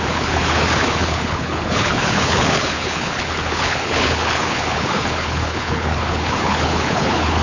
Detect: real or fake fake